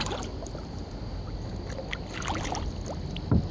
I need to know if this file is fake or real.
real